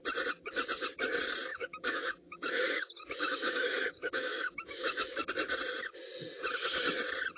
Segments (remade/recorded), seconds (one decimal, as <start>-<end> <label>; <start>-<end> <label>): 0.0-1.5 recorded; 1.5-5.3 remade; 5.3-7.4 recorded